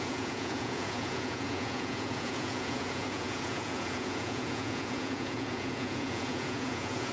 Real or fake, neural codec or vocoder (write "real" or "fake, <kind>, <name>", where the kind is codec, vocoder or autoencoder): fake, vocoder, Vocos